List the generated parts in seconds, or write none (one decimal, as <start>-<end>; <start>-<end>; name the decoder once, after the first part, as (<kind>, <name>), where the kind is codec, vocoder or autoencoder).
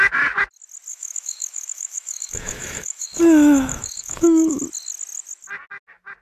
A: 0.9-4.6 (autoencoder, DAC-VAE)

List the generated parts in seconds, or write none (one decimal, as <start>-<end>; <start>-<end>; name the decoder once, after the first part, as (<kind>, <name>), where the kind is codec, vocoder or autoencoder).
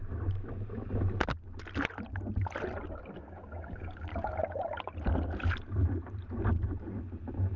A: 3.2-4.1 (codec, DAC)